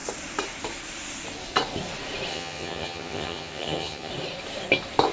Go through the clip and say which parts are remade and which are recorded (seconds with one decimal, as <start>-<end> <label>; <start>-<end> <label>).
0.0-2.3 recorded; 2.3-4.1 remade; 4.1-5.1 recorded